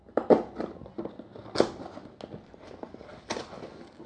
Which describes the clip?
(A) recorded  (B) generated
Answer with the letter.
A